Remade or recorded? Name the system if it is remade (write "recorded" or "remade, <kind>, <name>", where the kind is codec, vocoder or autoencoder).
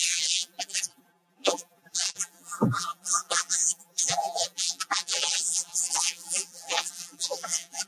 remade, vocoder, BigVGAN v2